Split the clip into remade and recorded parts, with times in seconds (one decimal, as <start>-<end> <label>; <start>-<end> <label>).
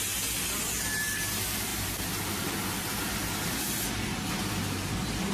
0.0-5.3 recorded